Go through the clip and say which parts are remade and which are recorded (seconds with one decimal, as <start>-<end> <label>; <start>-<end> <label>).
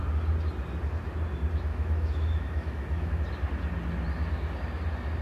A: 0.0-1.7 recorded; 1.7-3.2 remade; 3.2-5.2 recorded